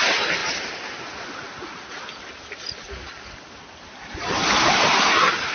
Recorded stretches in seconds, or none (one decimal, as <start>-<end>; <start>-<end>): 0.0-5.5